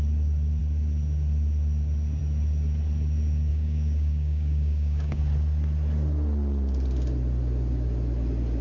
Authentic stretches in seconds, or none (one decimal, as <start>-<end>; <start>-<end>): 0.0-3.5; 5.2-8.6